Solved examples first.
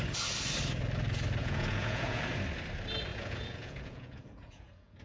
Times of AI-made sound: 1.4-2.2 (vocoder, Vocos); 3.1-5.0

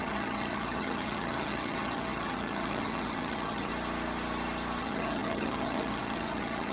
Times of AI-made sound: 0.0-3.7 (vocoder, HiFi-GAN); 4.8-6.7

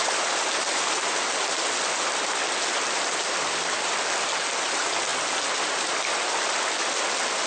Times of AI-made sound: none

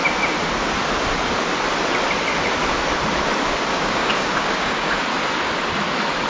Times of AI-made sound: 3.7-4.9 (codec, DAC)